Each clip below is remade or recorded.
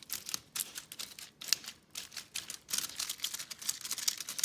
recorded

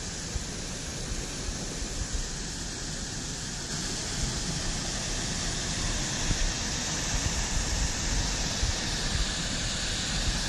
recorded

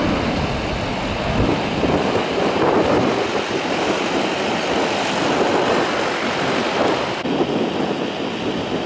recorded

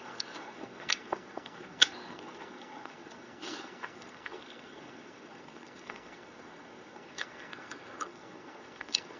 remade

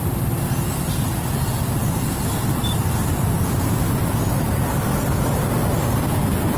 recorded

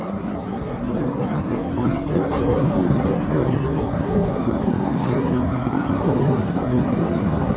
remade